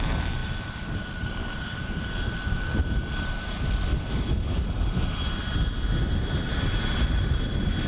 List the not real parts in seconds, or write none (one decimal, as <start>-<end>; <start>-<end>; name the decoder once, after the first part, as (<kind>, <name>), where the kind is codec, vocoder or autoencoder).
0.0-3.9 (vocoder, BigVGAN v2); 6.1-7.9